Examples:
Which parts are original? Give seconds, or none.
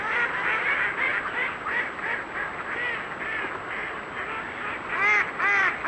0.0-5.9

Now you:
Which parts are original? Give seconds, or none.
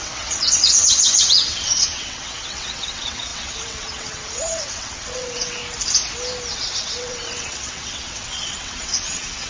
5.6-6.5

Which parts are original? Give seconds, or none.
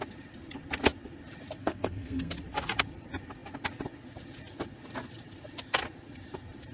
0.0-1.6; 2.3-6.7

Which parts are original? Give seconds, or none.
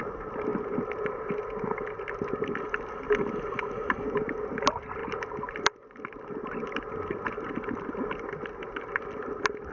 0.0-9.7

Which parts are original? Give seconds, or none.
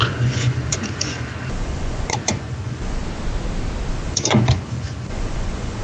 3.0-3.9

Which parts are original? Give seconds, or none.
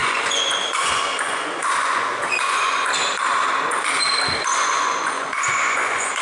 2.9-4.4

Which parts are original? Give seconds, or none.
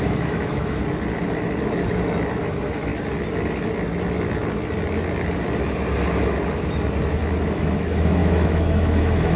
0.8-2.4; 2.9-7.6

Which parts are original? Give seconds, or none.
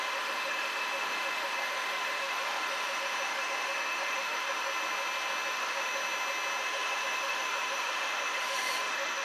4.7-5.5; 6.0-6.6